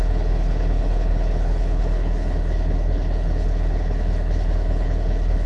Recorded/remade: remade